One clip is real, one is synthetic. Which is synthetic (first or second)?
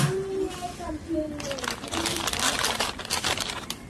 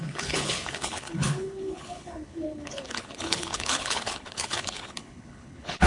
second